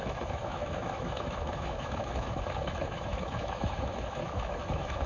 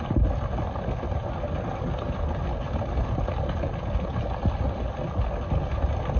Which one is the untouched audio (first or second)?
second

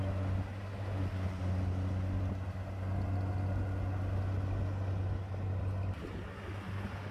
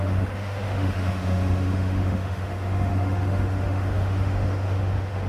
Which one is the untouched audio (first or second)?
first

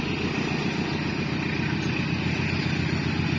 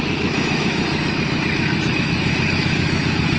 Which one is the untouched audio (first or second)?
first